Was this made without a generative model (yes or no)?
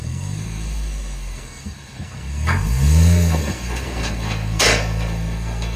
no